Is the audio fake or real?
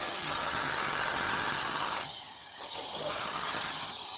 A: fake